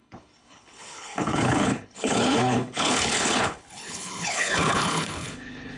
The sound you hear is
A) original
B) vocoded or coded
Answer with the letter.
B